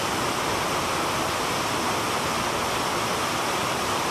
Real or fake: real